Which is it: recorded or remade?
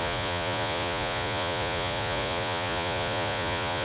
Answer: remade